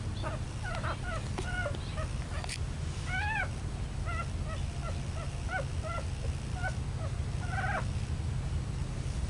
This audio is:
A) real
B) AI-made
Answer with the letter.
A